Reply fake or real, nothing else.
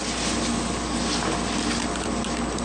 real